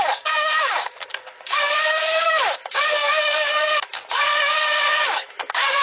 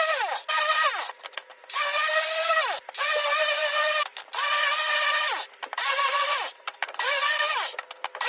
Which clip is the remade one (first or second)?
first